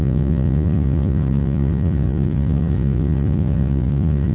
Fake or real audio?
fake